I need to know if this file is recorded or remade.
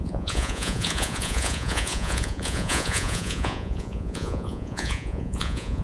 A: remade